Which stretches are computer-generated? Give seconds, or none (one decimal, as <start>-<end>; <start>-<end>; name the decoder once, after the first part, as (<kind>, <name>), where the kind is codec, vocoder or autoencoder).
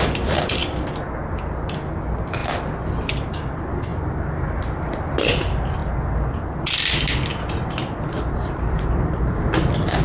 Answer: 0.0-0.6 (vocoder, BigVGAN v2); 1.4-2.4; 3.1-5.8; 8.4-10.0